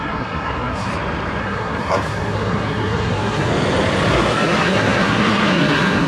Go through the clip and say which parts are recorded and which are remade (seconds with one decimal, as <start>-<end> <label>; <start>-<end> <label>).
0.0-0.9 remade; 0.9-1.4 recorded; 1.4-3.5 remade; 3.5-4.1 recorded; 4.1-6.1 remade